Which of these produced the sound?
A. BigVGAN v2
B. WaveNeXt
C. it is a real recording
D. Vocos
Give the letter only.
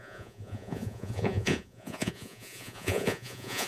D